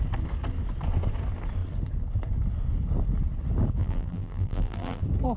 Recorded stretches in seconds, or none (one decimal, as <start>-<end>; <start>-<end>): 0.0-3.8; 5.0-5.4